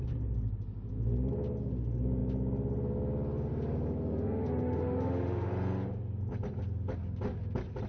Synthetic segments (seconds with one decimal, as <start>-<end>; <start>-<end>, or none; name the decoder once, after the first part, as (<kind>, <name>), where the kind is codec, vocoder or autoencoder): 4.1-5.5 (autoencoder, DAC-VAE)